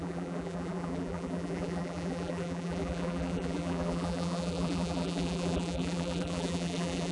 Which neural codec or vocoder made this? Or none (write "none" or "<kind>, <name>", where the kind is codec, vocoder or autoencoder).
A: vocoder, BigVGAN v2